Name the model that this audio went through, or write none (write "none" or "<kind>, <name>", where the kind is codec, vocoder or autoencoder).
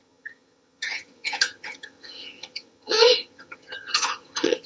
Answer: vocoder, HiFi-GAN